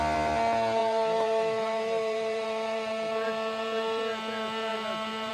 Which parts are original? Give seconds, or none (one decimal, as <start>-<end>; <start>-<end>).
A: 0.0-0.8; 4.0-4.7

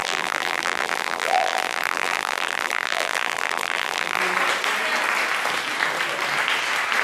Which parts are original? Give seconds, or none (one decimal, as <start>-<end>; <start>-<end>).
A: 4.2-7.0